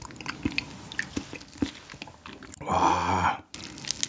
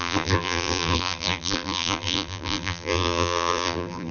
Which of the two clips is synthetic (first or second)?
second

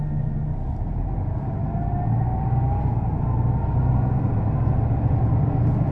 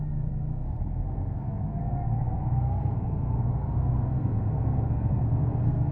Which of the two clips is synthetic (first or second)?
second